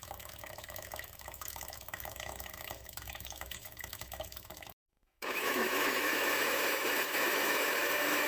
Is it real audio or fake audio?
fake